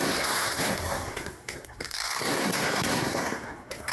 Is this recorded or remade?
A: remade